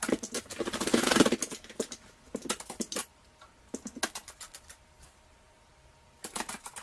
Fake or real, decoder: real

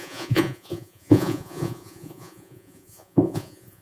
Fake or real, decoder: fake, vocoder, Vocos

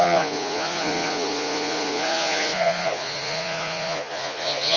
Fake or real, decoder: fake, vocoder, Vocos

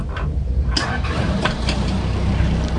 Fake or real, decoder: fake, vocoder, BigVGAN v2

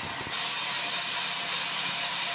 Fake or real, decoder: real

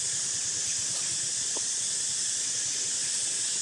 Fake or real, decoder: real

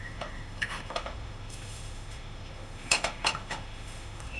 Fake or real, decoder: fake, autoencoder, DAC-VAE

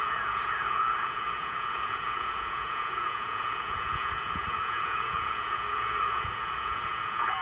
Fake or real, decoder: fake, vocoder, Vocos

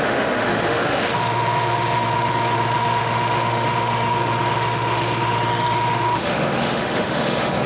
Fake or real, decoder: fake, autoencoder, DAC-VAE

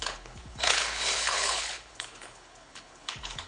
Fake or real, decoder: fake, codec, HILCodec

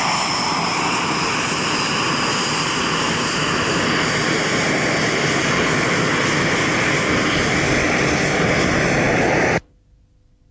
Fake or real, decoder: real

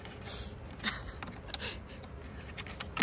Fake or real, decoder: real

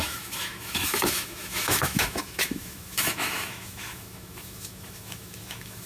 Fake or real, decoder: fake, autoencoder, DAC-VAE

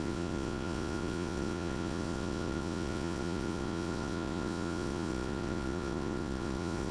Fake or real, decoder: fake, vocoder, Vocos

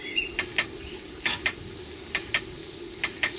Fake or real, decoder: real